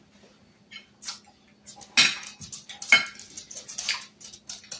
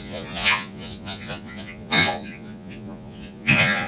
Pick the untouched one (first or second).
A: first